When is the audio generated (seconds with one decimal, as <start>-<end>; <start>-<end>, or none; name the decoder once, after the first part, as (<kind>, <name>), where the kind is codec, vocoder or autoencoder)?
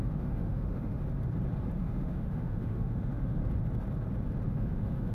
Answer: 0.0-1.0 (autoencoder, DAC-VAE); 1.8-3.4; 4.5-5.1